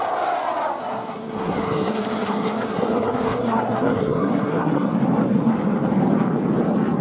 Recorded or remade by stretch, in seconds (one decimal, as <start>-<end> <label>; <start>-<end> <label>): 0.0-0.8 recorded; 0.8-5.0 remade; 5.0-7.0 recorded